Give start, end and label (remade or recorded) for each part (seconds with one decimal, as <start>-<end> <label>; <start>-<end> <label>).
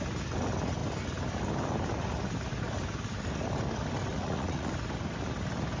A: 0.0-4.1 recorded; 4.1-4.7 remade; 4.7-5.8 recorded